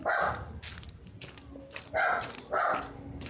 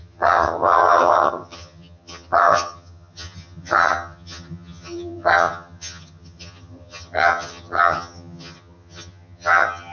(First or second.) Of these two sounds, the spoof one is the second